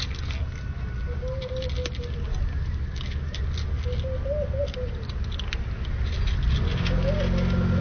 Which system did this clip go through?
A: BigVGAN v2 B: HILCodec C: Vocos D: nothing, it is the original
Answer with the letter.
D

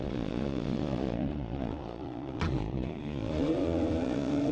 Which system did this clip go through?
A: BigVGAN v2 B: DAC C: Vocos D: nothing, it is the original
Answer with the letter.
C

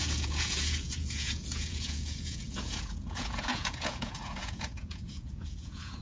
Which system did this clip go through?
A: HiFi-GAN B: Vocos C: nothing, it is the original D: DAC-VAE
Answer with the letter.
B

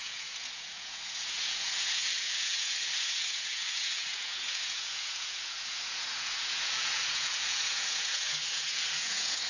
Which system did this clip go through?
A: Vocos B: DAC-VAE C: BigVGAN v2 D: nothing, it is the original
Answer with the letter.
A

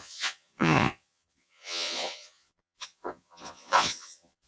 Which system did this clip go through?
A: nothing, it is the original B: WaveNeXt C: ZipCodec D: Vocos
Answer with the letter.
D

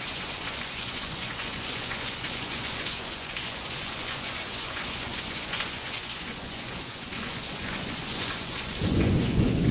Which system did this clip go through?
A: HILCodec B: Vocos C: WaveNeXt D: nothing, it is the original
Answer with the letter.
B